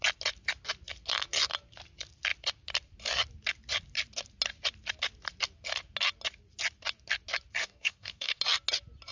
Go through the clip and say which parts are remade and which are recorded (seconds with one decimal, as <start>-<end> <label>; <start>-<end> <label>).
0.0-7.6 recorded; 7.6-8.4 remade; 8.4-9.1 recorded